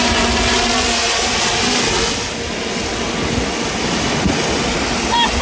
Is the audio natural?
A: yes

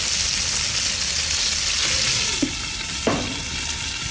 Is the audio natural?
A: yes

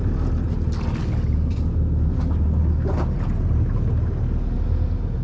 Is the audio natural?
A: yes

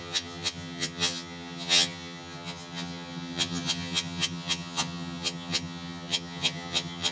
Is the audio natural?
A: no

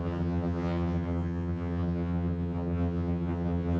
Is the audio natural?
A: no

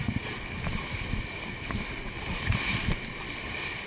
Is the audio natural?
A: yes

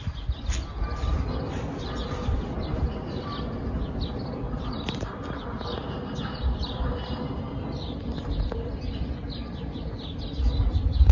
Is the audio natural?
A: yes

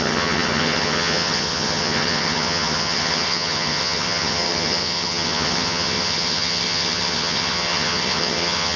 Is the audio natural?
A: no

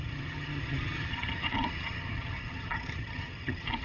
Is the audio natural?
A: no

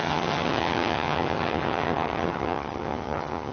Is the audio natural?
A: no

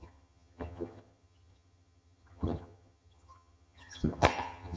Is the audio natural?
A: no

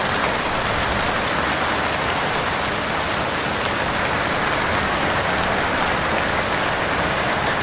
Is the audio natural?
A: yes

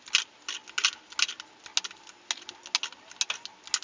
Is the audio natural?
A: yes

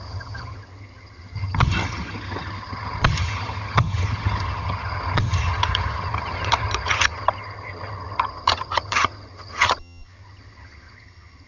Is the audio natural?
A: no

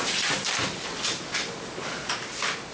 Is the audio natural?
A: yes